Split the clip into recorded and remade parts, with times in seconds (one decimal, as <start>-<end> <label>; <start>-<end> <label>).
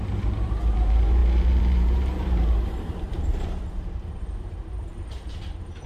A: 0.0-5.9 remade